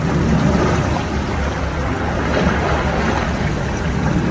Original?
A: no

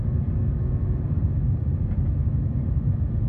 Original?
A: yes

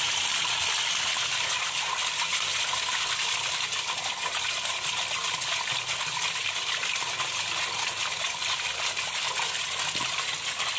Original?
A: yes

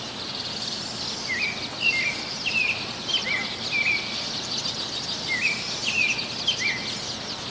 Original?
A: yes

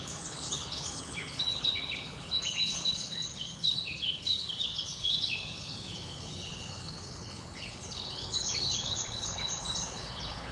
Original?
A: no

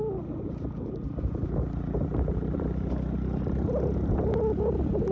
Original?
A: yes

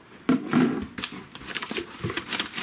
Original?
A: yes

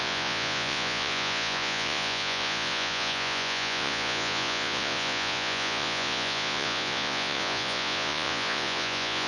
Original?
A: no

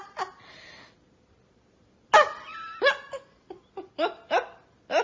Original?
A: yes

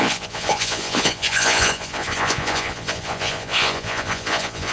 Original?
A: no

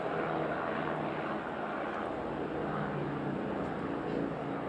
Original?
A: yes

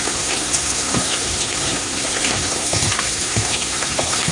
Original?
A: no